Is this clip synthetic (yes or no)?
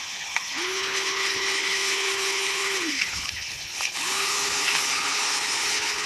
yes